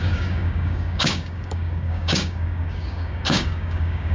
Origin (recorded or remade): remade